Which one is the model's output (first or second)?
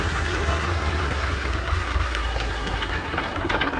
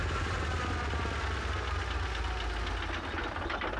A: first